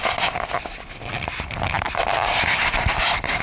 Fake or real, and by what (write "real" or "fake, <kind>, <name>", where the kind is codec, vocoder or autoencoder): real